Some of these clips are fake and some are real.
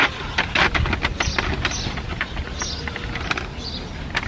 real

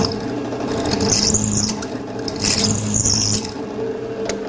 real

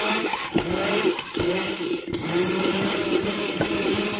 fake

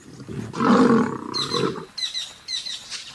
real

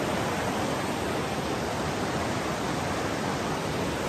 real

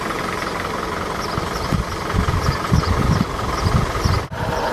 fake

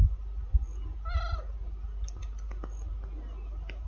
real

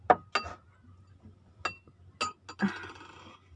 real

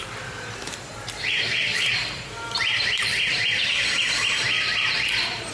fake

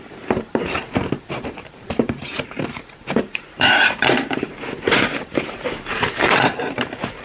fake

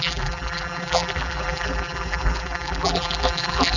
fake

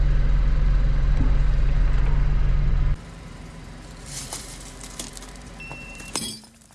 fake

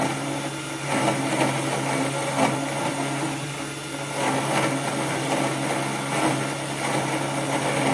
real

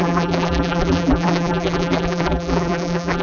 fake